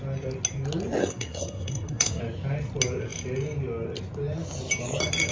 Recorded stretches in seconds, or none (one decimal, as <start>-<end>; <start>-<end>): 0.0-1.0; 2.2-5.3